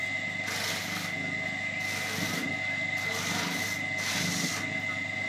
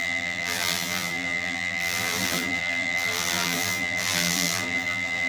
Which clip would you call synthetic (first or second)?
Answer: second